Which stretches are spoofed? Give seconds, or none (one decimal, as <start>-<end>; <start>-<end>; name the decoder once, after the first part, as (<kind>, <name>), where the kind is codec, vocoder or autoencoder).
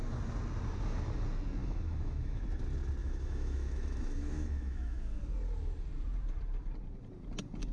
1.6-2.4 (autoencoder, DAC-VAE); 3.0-5.2